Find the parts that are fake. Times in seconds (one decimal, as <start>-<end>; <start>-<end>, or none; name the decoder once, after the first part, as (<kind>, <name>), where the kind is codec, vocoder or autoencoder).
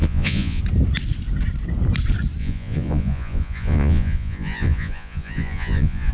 0.0-0.6 (vocoder, Vocos); 2.4-6.1